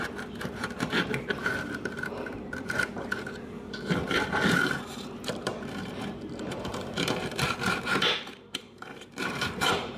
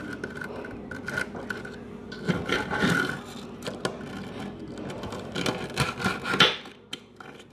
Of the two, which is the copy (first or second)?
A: first